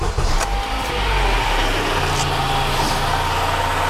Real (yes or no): yes